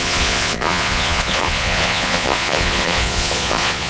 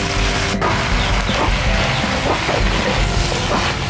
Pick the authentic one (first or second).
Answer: second